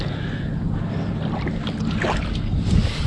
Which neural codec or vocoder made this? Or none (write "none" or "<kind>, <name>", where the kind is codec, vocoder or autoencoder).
none